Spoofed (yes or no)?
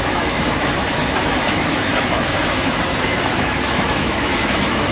yes